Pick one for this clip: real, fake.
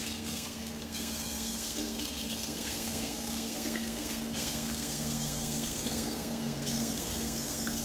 fake